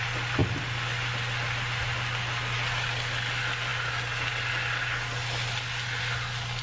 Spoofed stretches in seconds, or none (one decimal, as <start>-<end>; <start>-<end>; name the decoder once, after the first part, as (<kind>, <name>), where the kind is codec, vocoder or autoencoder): none